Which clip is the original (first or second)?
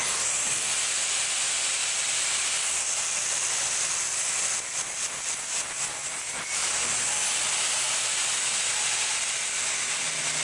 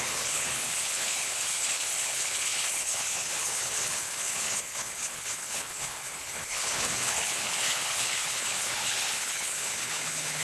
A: first